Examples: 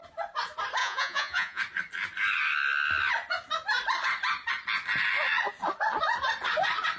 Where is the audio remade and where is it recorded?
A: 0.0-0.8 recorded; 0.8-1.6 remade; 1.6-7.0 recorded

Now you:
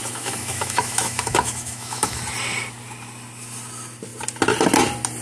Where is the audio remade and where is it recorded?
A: 0.0-2.2 remade; 2.2-5.2 recorded